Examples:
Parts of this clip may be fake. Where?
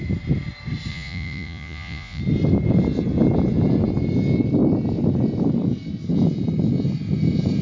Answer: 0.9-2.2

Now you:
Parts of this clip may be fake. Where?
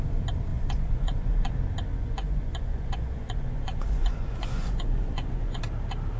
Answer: 0.5-1.5; 1.9-5.6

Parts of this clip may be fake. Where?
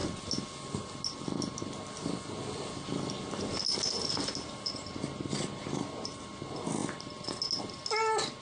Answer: none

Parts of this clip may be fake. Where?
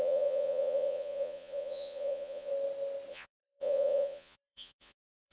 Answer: 0.0-2.5; 3.1-5.3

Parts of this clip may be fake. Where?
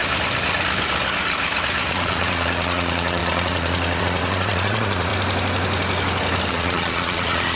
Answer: 1.9-5.1; 6.5-7.6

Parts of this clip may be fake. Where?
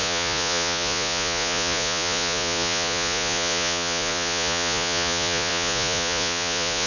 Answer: 0.0-6.9